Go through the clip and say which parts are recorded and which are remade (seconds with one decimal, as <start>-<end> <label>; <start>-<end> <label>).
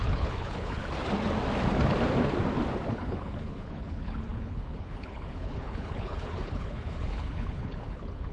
0.0-0.8 remade; 0.8-2.9 recorded; 2.9-8.3 remade